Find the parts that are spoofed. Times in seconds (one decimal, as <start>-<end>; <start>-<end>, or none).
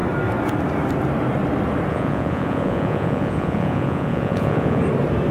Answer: 1.9-4.8